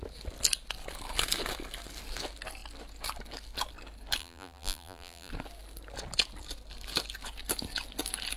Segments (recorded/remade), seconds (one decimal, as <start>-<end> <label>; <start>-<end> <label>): 0.0-4.2 recorded; 4.2-5.3 remade; 5.3-8.4 recorded